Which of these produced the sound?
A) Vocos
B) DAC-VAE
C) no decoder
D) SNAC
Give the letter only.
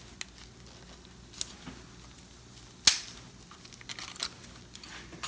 C